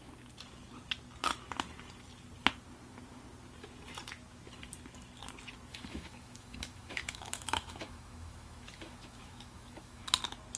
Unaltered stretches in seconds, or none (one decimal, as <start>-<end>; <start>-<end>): 0.0-5.7; 10.0-10.6